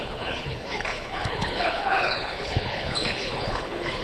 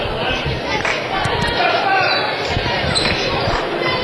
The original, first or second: second